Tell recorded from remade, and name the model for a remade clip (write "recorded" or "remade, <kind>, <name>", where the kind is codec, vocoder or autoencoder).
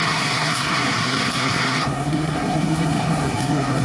remade, codec, SNAC